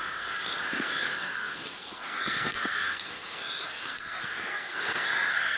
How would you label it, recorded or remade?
remade